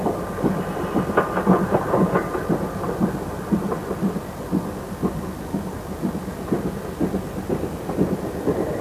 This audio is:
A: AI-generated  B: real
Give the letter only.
B